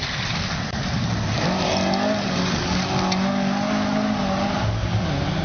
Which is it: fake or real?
real